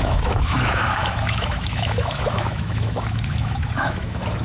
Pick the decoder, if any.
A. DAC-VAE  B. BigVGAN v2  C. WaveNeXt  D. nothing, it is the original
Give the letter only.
A